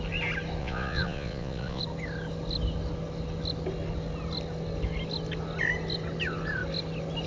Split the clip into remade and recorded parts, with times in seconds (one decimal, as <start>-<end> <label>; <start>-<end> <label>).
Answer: 0.0-0.6 recorded; 0.6-1.8 remade; 1.8-7.3 recorded